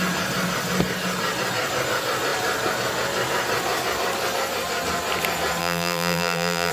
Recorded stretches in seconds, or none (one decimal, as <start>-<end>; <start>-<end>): 0.0-5.6